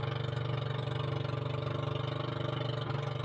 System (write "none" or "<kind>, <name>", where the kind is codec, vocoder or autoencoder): none